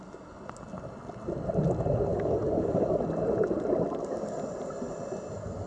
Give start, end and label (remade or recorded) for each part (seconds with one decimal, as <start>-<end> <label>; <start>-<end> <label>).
0.0-2.1 recorded; 2.1-3.0 remade; 3.0-5.7 recorded